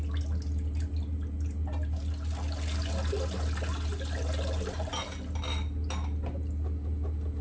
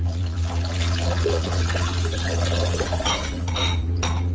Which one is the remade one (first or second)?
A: second